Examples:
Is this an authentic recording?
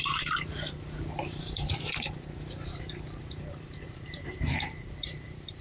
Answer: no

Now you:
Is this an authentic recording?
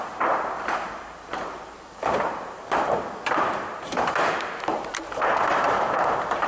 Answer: no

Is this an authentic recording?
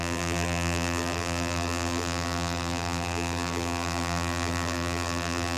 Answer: no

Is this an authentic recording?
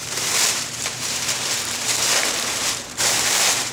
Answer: no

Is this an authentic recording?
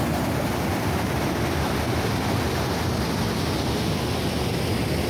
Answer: yes